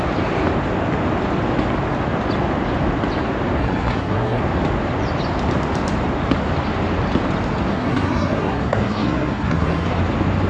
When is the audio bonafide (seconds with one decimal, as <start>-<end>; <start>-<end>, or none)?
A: 0.0-3.6; 4.4-7.7; 10.0-10.5